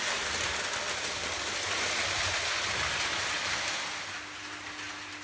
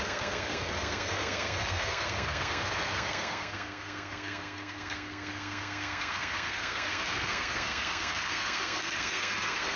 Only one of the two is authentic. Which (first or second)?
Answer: first